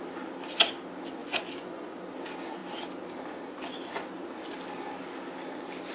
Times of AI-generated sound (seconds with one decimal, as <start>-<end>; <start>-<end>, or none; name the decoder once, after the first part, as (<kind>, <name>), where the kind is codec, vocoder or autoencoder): 1.2-2.0 (vocoder, Vocos)